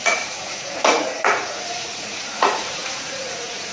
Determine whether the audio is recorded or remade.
remade